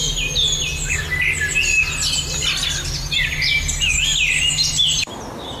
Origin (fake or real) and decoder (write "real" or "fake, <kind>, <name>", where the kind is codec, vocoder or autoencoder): real